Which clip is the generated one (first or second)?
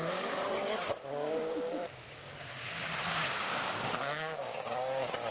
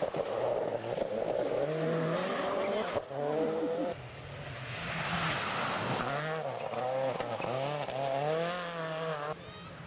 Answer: first